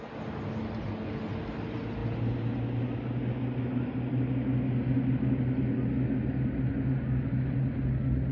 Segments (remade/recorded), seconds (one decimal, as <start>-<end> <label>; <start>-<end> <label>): 0.0-6.7 recorded; 6.7-7.8 remade; 7.8-8.3 recorded